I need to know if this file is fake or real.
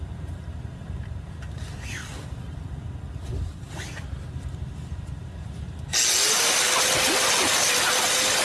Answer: real